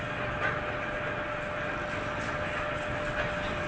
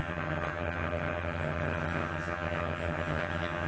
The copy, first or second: second